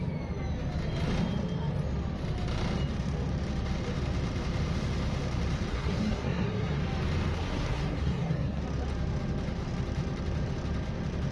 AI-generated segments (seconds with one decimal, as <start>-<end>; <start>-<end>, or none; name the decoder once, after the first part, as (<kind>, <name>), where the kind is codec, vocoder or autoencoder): 5.7-6.8 (codec, SNAC); 7.3-8.6